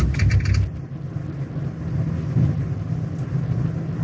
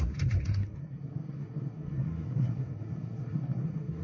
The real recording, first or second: first